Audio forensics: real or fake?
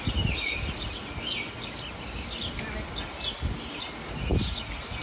real